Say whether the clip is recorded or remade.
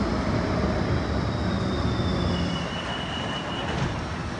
recorded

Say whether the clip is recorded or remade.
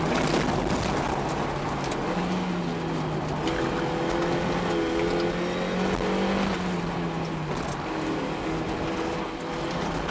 recorded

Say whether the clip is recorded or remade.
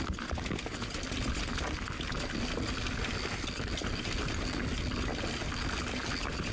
recorded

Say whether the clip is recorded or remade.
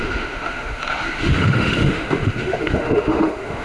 remade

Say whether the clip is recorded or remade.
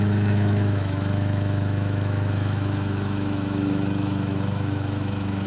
remade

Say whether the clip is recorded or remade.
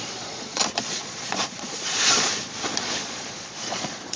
remade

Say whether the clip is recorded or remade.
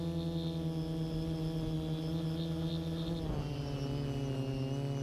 recorded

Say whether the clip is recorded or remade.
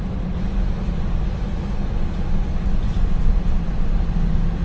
recorded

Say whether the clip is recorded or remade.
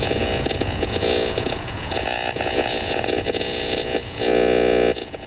remade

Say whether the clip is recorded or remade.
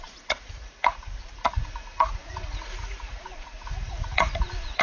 remade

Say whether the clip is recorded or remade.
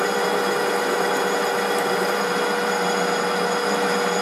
recorded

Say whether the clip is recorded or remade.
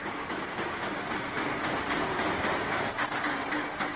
recorded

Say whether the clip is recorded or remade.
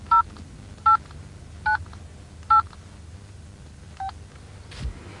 recorded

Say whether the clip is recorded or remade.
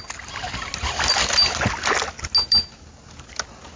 recorded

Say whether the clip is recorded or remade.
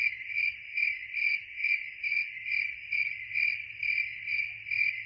recorded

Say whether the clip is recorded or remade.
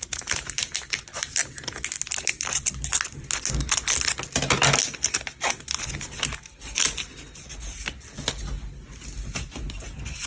recorded